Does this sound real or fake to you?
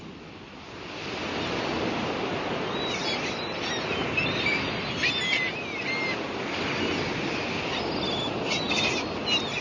real